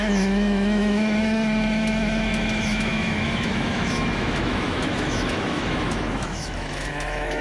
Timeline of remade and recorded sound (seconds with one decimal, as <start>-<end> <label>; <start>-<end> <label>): 0.0-7.4 remade